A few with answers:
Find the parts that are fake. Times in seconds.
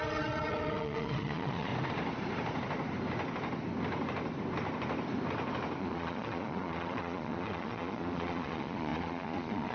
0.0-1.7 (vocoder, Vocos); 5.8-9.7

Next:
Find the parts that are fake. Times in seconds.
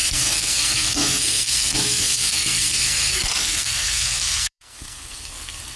0.0-5.8 (codec, SNAC)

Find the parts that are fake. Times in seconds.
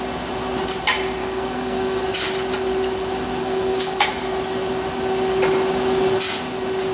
1.2-2.0 (codec, SNAC); 3.4-4.1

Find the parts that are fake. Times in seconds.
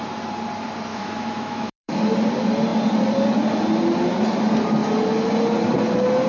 0.9-2.0 (autoencoder, DAC-VAE)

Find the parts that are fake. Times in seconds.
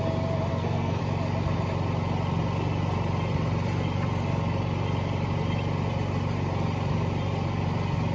0.5-1.0 (codec, SNAC)